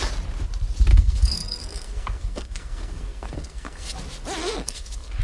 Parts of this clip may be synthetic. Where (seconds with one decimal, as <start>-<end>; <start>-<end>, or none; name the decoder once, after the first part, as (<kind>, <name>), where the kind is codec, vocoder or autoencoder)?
0.9-4.0 (codec, SNAC); 4.4-5.2